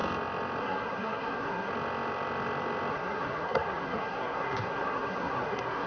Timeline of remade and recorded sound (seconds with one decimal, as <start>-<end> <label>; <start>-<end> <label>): 0.0-0.6 recorded; 0.6-1.7 remade; 1.7-2.9 recorded; 2.9-5.9 remade